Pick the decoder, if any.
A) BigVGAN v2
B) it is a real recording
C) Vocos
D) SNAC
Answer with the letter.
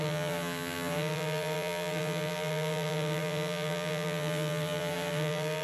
A